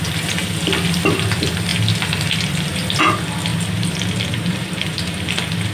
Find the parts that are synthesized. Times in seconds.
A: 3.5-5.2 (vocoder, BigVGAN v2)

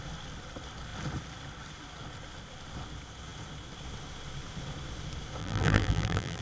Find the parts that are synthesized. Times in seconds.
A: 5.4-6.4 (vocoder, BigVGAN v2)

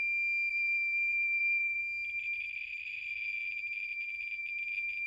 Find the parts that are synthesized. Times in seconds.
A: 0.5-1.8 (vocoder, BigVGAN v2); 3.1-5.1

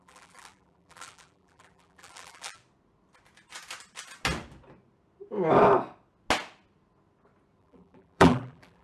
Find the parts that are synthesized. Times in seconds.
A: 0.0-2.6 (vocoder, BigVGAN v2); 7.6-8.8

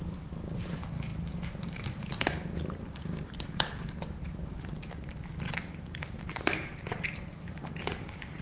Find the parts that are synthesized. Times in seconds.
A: 0.0-8.4 (vocoder, BigVGAN v2)

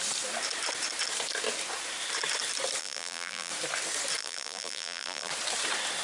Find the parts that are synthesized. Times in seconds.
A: 2.8-3.5 (vocoder, BigVGAN v2); 4.2-5.3

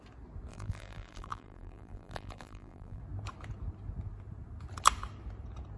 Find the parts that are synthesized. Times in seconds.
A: 0.5-3.0 (vocoder, BigVGAN v2)

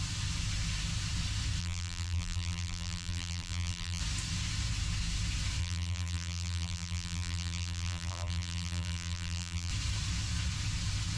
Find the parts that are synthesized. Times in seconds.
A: 1.6-4.0 (vocoder, BigVGAN v2); 5.6-9.7